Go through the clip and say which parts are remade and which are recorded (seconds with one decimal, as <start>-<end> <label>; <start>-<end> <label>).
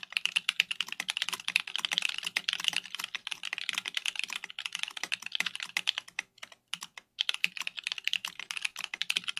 0.0-9.4 recorded